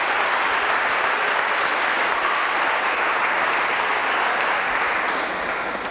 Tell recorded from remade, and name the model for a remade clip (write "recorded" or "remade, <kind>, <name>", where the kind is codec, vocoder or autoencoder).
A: recorded